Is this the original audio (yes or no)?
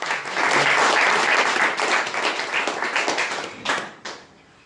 yes